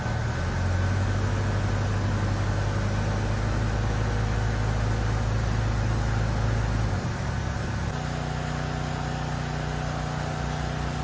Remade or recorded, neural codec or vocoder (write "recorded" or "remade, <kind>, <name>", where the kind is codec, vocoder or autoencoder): recorded